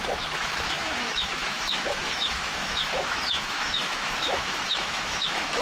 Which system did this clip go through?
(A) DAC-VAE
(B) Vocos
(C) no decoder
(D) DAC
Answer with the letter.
A